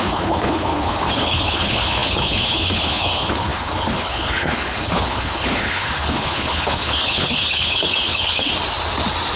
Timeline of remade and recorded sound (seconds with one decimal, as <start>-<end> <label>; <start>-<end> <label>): 0.0-8.5 remade; 8.5-9.4 recorded